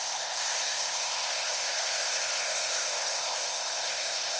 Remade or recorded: remade